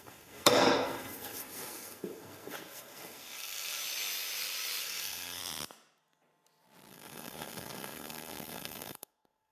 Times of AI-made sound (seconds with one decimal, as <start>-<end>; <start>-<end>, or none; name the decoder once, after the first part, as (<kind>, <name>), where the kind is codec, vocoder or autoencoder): 0.0-3.8 (codec, SNAC); 4.8-5.4; 6.9-9.5